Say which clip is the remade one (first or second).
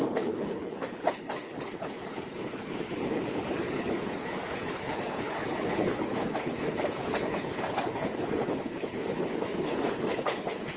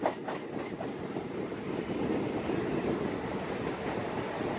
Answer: first